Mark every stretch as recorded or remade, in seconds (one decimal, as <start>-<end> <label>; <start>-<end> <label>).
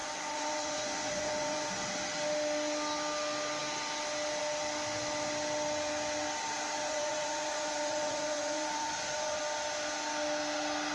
0.0-1.7 remade; 1.7-6.8 recorded; 6.8-9.4 remade; 9.4-10.9 recorded